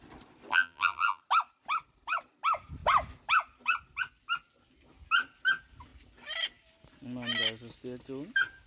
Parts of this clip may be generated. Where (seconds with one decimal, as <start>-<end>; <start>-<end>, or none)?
0.5-1.2

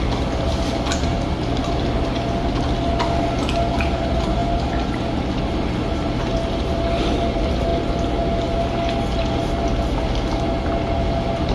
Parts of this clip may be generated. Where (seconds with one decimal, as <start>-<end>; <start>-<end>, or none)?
none